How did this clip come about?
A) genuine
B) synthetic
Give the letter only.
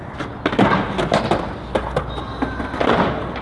A